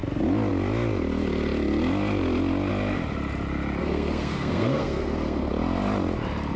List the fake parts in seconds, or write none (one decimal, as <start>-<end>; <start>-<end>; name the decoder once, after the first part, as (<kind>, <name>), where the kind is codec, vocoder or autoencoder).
3.8-5.5 (codec, SNAC)